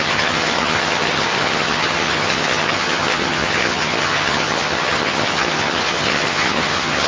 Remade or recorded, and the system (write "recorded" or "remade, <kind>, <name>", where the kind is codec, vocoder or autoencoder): remade, vocoder, HiFi-GAN